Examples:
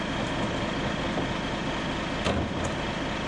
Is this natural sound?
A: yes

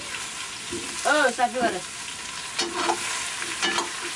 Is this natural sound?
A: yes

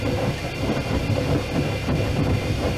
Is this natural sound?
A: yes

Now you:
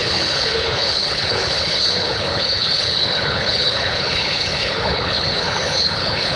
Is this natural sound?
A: no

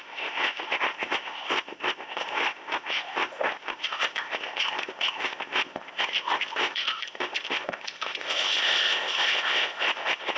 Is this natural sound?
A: no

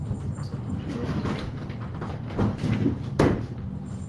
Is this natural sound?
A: yes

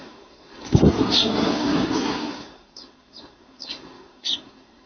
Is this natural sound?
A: no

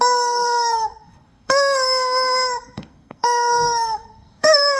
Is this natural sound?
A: no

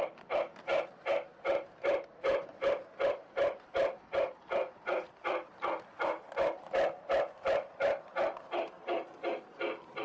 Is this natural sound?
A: no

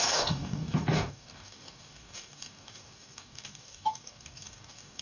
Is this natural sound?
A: no